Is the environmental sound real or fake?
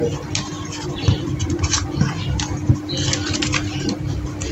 real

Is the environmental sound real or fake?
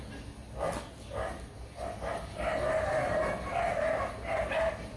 real